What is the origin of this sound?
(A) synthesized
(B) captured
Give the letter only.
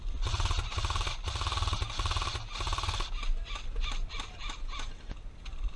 B